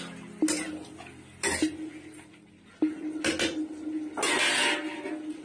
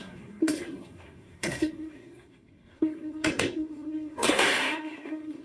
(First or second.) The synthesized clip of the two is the second